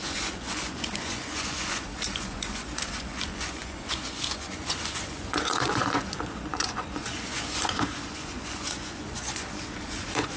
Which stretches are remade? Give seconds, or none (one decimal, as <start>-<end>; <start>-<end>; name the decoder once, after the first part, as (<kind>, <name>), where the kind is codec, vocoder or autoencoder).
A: 0.0-10.4 (vocoder, Vocos)